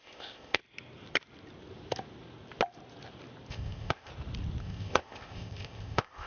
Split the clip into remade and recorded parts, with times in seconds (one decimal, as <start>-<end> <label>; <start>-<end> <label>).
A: 0.0-0.6 remade; 0.6-3.5 recorded; 3.5-4.1 remade; 4.1-4.6 recorded; 4.6-6.3 remade